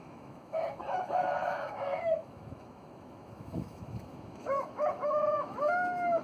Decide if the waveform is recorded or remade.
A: remade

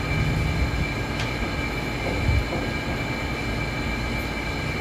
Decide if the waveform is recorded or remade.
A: recorded